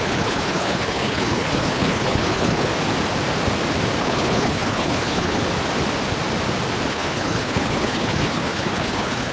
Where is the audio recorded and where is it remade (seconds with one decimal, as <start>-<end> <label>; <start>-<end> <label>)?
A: 0.0-2.7 remade; 2.7-4.0 recorded; 4.0-5.4 remade; 5.4-6.9 recorded; 6.9-9.3 remade